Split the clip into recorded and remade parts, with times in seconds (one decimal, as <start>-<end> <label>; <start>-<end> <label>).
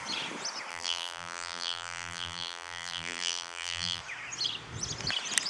0.0-0.7 recorded; 0.7-4.0 remade; 4.0-5.5 recorded